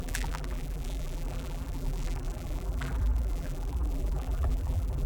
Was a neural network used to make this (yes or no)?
yes